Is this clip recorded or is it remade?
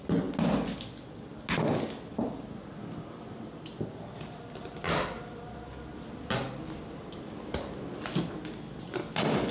recorded